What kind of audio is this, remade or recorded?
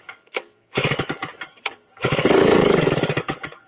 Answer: remade